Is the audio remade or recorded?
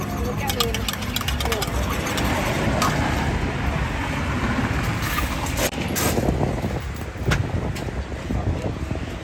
recorded